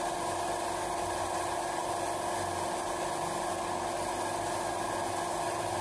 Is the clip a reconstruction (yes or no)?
no